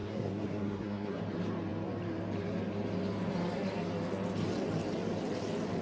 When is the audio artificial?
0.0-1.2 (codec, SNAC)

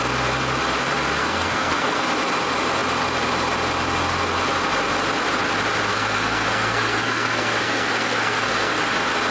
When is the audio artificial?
1.2-2.0 (codec, SNAC); 5.9-8.8

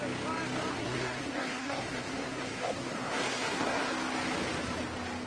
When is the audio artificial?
0.7-3.9 (codec, SNAC)

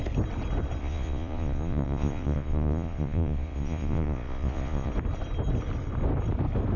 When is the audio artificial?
0.8-4.9 (vocoder, Vocos)

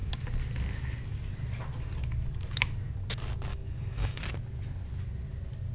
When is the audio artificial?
3.5-4.2 (codec, DAC)

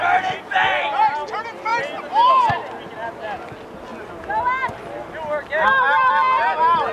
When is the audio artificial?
none